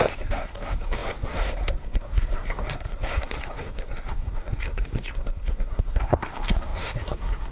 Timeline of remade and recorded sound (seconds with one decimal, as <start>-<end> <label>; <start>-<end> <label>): 0.0-7.5 remade